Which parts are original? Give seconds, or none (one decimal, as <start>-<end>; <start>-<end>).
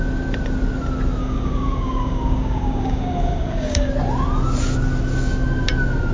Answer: 0.0-1.2; 3.9-6.1